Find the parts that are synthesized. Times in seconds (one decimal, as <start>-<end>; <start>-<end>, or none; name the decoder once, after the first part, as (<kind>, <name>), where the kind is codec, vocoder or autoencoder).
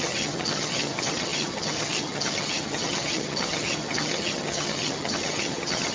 0.0-5.9 (vocoder, HiFi-GAN)